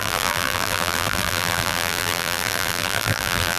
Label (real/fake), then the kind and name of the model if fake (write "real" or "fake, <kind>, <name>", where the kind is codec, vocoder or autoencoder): fake, vocoder, BigVGAN v2